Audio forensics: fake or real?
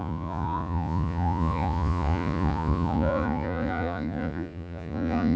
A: fake